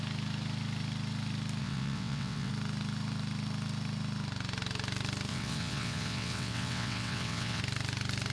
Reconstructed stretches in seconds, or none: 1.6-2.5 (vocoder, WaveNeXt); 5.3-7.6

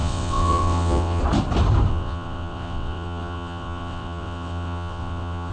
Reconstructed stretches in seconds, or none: 0.0-1.2 (vocoder, WaveNeXt); 1.9-5.5

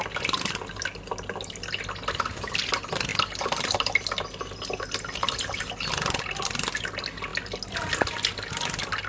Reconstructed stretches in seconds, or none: none

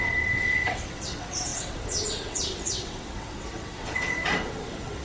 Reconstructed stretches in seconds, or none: 0.0-5.0 (vocoder, WaveNeXt)

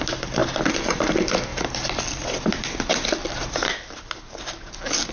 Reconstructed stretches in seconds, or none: none

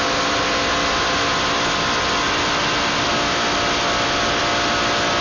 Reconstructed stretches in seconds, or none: none

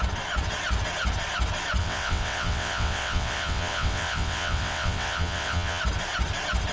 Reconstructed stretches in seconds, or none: 1.8-5.8 (vocoder, WaveNeXt)